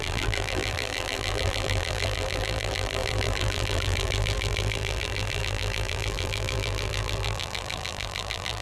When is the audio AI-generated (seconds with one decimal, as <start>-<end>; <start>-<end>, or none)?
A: 0.0-8.6